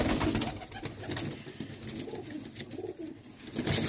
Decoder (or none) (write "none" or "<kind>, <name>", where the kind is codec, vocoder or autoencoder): none